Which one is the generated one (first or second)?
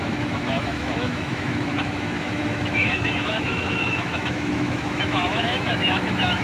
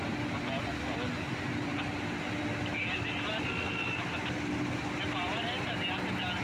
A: first